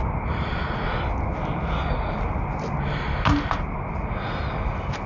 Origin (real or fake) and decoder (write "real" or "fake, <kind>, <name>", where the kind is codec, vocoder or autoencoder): real